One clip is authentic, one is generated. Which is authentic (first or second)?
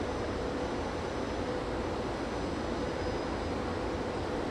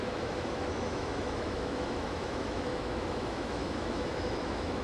first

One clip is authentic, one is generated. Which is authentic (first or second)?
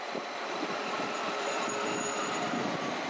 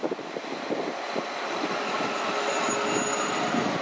second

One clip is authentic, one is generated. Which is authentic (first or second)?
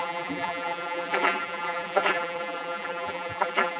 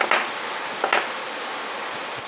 second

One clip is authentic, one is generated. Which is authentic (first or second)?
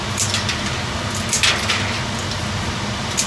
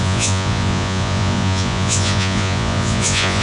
first